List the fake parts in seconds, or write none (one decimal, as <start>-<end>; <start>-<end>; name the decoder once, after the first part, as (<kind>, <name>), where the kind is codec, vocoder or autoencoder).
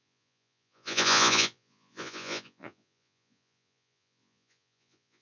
0.0-5.2 (vocoder, Vocos)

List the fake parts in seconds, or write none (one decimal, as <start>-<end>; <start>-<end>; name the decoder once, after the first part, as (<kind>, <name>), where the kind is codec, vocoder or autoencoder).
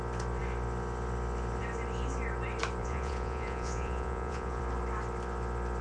2.8-4.6 (vocoder, Vocos)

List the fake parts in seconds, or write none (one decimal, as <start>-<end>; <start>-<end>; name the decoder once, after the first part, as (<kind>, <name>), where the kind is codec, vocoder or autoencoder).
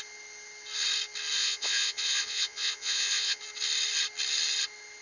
1.4-3.4 (vocoder, Vocos)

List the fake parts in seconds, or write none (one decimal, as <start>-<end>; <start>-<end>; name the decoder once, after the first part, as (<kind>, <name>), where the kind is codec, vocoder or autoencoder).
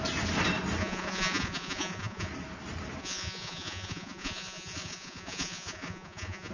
0.8-2.3 (vocoder, Vocos); 3.0-6.5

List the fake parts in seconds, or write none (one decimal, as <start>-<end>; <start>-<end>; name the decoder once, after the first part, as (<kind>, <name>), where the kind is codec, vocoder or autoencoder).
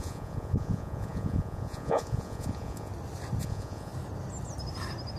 0.0-2.9 (vocoder, Vocos); 3.4-3.9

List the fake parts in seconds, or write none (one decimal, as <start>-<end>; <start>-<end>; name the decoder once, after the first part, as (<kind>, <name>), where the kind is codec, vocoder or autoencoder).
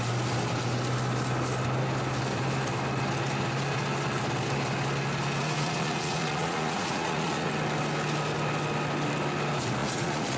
5.4-7.5 (vocoder, Vocos); 9.8-10.4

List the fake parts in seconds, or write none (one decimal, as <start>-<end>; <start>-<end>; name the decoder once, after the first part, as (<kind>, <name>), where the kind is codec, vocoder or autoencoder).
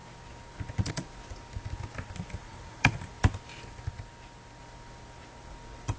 2.4-3.0 (vocoder, Vocos)